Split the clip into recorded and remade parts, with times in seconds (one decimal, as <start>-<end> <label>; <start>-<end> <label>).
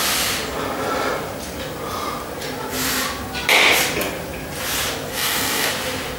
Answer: 0.0-5.1 recorded; 5.1-5.7 remade; 5.7-6.2 recorded